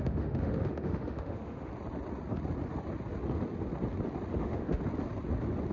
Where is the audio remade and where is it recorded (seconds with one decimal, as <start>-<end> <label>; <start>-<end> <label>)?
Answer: 0.0-1.7 remade; 1.7-4.3 recorded; 4.3-4.8 remade; 4.8-5.7 recorded